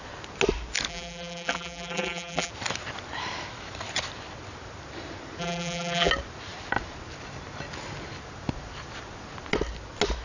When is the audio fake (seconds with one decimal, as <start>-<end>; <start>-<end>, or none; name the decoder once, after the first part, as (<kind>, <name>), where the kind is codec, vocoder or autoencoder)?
0.9-2.5 (vocoder, BigVGAN v2); 5.4-6.1